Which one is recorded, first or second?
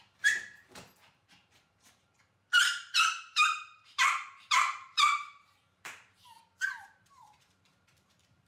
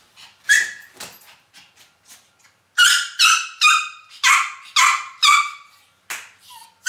second